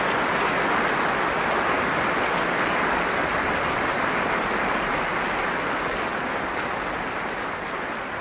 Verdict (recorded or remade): recorded